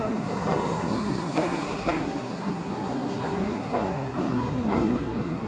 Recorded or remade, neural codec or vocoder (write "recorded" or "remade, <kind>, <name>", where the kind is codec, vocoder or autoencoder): remade, codec, SNAC